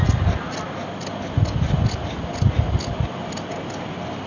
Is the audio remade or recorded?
recorded